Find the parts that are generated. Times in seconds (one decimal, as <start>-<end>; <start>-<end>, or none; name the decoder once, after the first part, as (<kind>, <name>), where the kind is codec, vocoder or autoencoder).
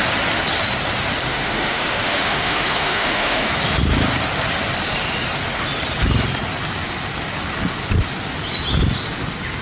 1.3-3.5 (autoencoder, DAC-VAE)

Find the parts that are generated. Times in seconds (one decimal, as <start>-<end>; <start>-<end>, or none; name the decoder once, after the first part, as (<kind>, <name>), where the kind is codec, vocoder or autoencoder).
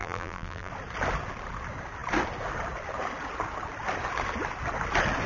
0.0-0.7 (vocoder, BigVGAN v2)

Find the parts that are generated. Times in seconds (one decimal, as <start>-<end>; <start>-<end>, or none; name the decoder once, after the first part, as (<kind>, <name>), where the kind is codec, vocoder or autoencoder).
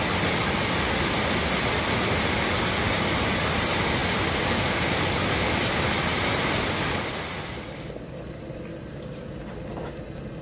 none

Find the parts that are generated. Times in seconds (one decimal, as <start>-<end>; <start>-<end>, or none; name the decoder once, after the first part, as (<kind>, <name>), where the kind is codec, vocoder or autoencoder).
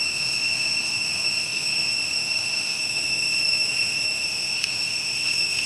0.0-5.7 (autoencoder, DAC-VAE)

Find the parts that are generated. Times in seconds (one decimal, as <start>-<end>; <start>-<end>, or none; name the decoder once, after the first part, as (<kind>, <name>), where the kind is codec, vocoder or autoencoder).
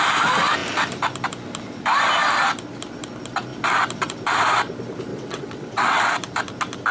5.1-6.0 (vocoder, WaveNeXt)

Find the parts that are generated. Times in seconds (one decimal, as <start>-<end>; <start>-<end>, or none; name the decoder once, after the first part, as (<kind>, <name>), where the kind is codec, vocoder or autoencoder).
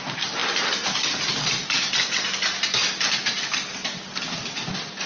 none